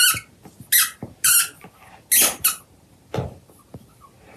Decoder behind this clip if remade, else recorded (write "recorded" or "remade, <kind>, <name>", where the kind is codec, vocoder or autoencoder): recorded